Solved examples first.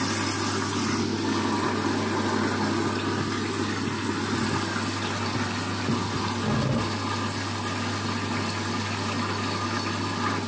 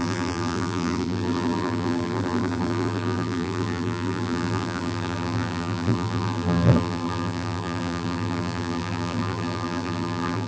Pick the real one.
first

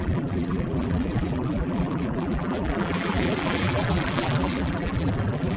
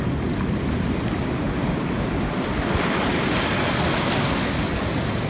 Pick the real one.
second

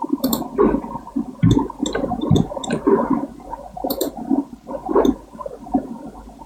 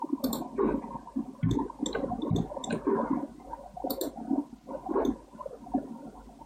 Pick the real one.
second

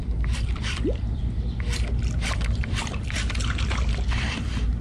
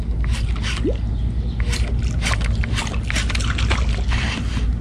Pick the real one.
second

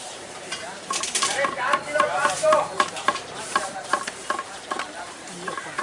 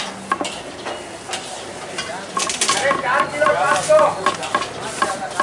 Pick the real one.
second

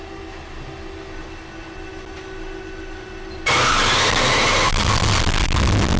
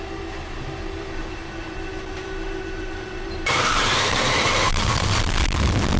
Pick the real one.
first